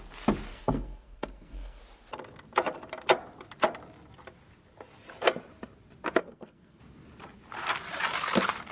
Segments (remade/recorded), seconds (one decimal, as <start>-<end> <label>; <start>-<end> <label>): 0.0-0.5 recorded; 0.5-1.8 remade; 1.8-6.2 recorded; 6.2-6.8 remade; 6.8-8.7 recorded